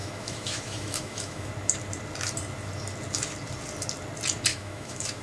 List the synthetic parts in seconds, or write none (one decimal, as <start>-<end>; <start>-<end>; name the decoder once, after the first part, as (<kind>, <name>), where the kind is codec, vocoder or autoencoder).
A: 0.0-1.5 (autoencoder, DAC-VAE); 4.5-5.2